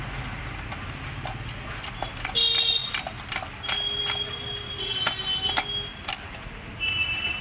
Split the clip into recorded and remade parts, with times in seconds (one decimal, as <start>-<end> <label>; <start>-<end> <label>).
0.0-7.4 recorded